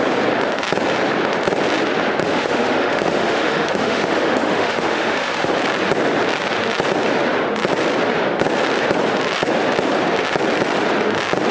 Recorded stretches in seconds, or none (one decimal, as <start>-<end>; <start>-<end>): 0.0-2.2; 5.5-11.5